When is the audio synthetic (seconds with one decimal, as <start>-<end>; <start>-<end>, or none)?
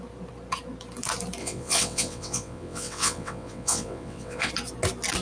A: 1.4-4.5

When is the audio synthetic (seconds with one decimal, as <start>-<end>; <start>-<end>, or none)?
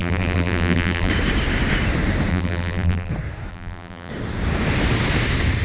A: 0.0-1.1; 2.3-3.1; 3.5-4.1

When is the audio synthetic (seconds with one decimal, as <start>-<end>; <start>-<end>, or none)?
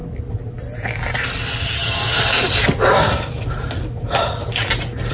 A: 1.6-2.0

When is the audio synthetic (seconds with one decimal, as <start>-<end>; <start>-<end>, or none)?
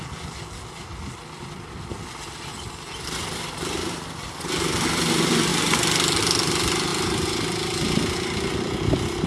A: none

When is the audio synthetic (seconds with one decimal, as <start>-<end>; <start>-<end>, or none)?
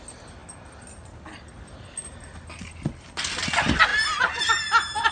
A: 3.9-5.1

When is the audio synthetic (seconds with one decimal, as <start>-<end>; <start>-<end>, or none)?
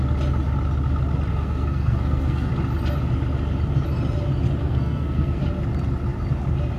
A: 1.3-2.5; 4.6-5.4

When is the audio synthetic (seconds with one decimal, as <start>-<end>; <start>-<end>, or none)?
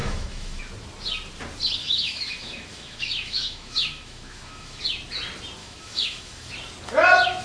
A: 0.0-0.6; 1.8-4.8; 5.6-6.5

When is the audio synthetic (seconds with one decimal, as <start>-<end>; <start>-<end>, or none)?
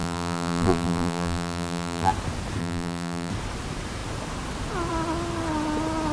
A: 0.0-2.1; 2.6-3.3